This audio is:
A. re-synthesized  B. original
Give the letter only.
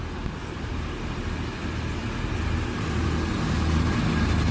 B